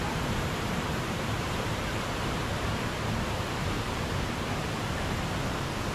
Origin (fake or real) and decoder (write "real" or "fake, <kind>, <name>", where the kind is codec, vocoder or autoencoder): fake, vocoder, BigVGAN v2